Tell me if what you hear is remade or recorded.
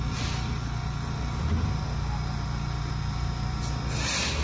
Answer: recorded